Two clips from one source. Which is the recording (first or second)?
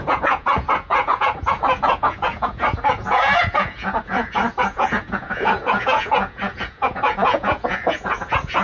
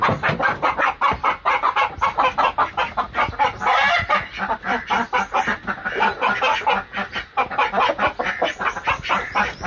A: second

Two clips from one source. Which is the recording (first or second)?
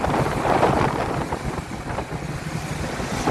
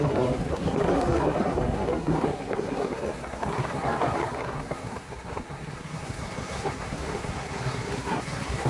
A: first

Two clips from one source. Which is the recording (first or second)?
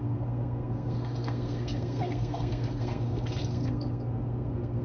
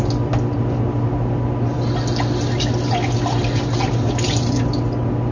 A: second